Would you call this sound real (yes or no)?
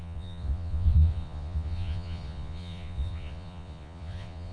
no